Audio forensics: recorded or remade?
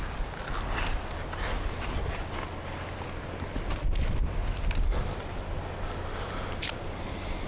recorded